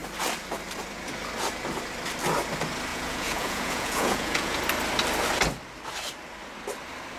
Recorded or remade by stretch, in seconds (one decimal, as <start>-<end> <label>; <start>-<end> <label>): 0.0-2.9 recorded; 2.9-4.6 remade; 4.6-7.2 recorded